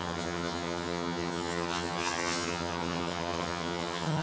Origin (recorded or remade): remade